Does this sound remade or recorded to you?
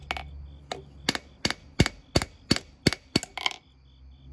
recorded